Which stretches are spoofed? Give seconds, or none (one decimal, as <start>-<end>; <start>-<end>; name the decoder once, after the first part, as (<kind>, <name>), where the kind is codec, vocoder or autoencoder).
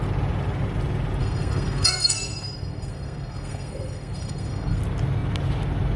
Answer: 1.2-4.8 (codec, SNAC)